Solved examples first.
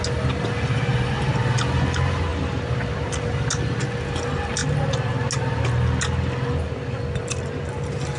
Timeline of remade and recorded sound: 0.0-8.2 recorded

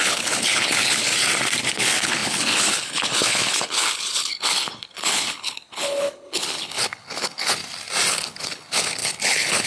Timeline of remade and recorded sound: 0.0-1.1 remade; 1.1-1.7 recorded; 1.7-7.6 remade; 7.6-8.1 recorded; 8.1-9.7 remade